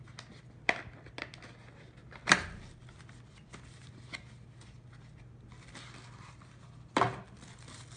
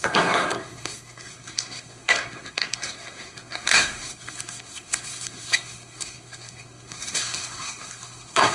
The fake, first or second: second